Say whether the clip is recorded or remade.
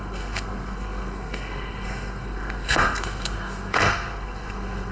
remade